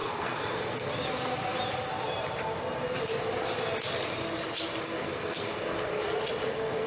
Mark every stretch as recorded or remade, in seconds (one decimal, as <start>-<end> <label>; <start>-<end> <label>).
0.0-0.9 remade; 0.9-4.8 recorded; 4.8-6.0 remade; 6.0-6.5 recorded; 6.5-6.9 remade